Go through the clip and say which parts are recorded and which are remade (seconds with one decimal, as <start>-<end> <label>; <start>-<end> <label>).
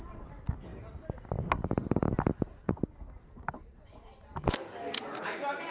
0.0-5.7 recorded